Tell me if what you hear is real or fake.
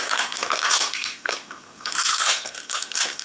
fake